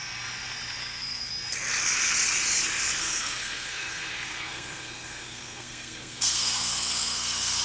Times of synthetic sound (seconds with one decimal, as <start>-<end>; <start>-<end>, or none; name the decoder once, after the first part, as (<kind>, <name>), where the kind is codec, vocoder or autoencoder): 0.8-1.3 (codec, SNAC); 3.0-7.6